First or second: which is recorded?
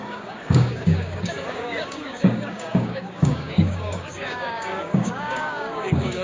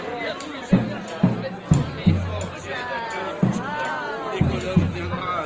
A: second